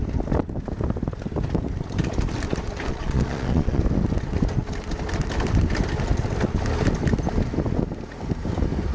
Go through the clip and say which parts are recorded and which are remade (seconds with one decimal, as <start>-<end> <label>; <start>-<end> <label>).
0.0-2.9 recorded; 2.9-3.8 remade; 3.8-8.9 recorded